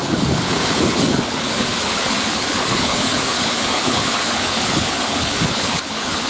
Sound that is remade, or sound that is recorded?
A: remade